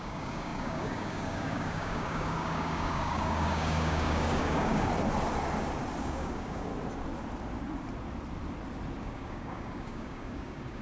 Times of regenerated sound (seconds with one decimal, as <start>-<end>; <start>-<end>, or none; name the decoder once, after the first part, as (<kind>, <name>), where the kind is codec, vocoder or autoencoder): 0.0-4.9 (codec, DAC); 6.0-6.7; 9.0-10.8